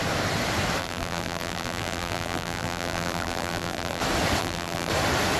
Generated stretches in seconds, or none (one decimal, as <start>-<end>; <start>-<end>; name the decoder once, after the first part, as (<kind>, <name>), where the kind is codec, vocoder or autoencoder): 0.8-4.0 (vocoder, BigVGAN v2); 4.4-4.9